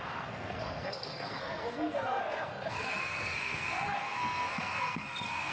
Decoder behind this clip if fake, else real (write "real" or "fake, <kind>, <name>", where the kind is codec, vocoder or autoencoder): fake, codec, SNAC